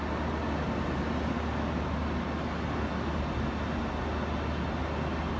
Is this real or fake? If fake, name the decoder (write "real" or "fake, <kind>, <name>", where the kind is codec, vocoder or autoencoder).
real